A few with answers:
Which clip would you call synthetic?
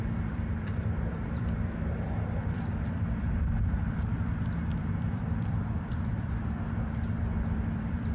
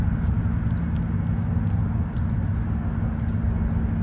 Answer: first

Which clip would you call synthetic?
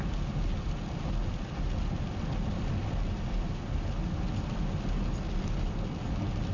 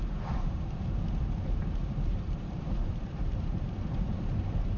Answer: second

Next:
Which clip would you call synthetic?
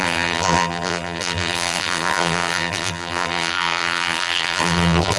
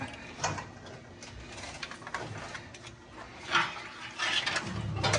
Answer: first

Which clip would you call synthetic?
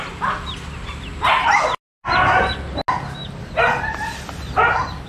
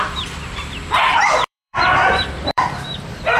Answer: second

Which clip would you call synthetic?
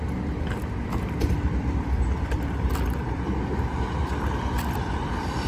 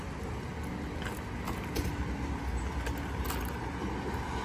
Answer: first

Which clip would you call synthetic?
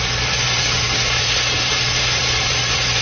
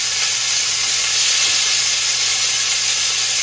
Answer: first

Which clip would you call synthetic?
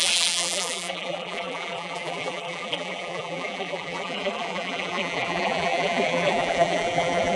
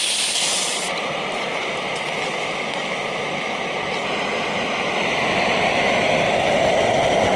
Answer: first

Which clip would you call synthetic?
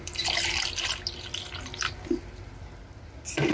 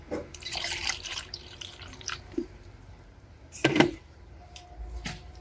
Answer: second